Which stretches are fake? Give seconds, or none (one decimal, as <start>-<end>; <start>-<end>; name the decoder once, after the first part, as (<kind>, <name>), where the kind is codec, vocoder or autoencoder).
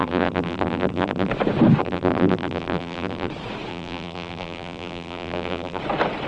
0.0-1.3 (vocoder, BigVGAN v2); 1.8-3.3; 3.7-5.8